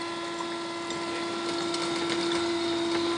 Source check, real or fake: real